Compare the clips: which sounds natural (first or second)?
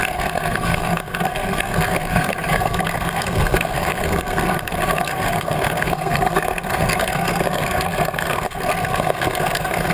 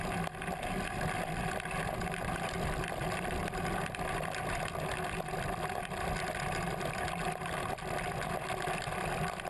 second